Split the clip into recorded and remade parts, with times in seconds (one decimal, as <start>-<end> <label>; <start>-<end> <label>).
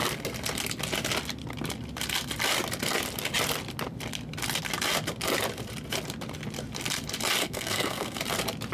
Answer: 0.0-7.4 recorded; 7.4-8.2 remade; 8.2-8.7 recorded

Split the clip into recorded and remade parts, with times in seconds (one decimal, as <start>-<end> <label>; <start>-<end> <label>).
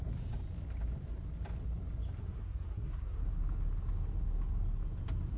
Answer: 0.0-2.2 recorded; 2.2-3.3 remade; 3.3-5.4 recorded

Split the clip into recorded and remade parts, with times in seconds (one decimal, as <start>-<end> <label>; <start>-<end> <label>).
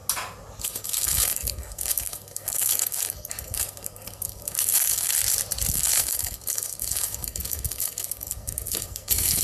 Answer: 0.0-0.6 recorded; 0.6-5.1 remade; 5.1-5.7 recorded; 5.7-9.4 remade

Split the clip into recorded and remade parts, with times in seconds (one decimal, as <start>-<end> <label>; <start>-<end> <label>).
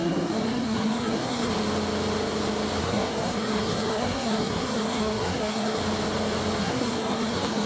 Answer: 0.0-1.5 remade; 1.5-2.8 recorded; 2.8-5.8 remade; 5.8-6.6 recorded; 6.6-7.7 remade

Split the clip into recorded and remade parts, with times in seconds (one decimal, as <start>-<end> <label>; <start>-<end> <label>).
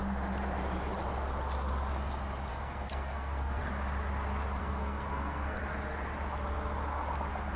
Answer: 0.0-2.5 recorded; 2.5-3.6 remade; 3.6-4.6 recorded; 4.6-5.6 remade; 5.6-7.6 recorded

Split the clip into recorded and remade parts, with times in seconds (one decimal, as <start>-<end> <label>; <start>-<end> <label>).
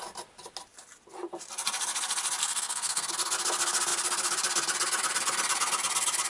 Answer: 0.0-2.4 recorded; 2.4-3.1 remade; 3.1-6.3 recorded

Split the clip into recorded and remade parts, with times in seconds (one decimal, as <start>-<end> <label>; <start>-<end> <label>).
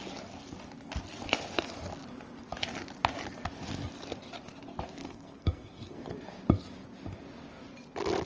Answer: 0.0-5.0 recorded; 5.0-6.1 remade; 6.1-8.3 recorded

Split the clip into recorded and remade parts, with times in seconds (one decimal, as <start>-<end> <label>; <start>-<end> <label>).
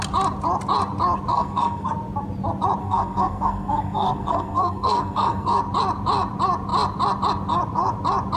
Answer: 0.0-1.3 recorded; 1.3-1.9 remade; 1.9-2.8 recorded; 2.8-5.6 remade; 5.6-8.4 recorded